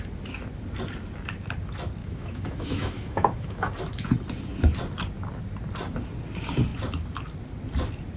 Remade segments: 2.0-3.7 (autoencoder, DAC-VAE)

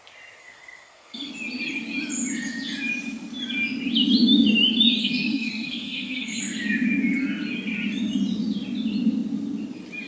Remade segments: 0.4-1.3 (codec, SNAC); 5.0-6.4

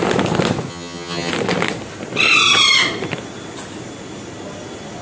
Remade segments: 0.7-1.3 (vocoder, HiFi-GAN)

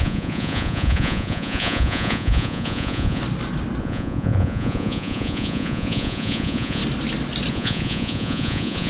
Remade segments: 0.0-3.2 (vocoder, Vocos); 3.8-6.8; 7.5-8.9

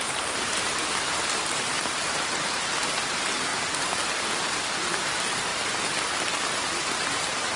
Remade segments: 0.0-3.5 (vocoder, BigVGAN v2); 4.4-5.5; 6.8-7.6